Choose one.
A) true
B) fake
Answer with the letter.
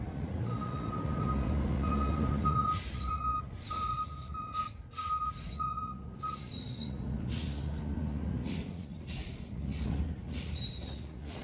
B